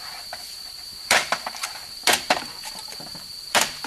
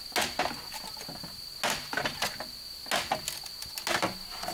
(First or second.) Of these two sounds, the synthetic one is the first